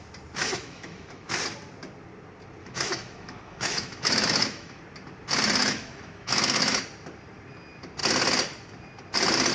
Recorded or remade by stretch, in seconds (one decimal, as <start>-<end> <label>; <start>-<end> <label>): 0.0-0.4 recorded; 0.4-1.3 remade; 1.3-2.6 recorded; 2.6-4.8 remade; 4.8-5.6 recorded; 5.6-6.8 remade; 6.8-9.5 recorded